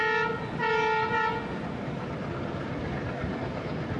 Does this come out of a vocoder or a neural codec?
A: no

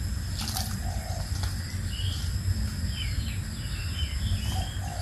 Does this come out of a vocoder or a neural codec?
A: no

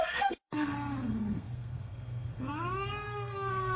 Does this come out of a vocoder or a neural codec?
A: yes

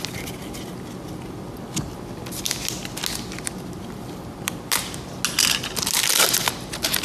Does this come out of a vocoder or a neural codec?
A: no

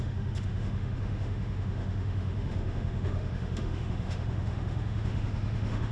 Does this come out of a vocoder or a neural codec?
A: yes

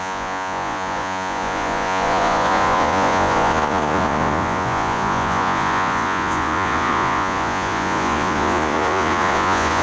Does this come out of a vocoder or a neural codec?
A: yes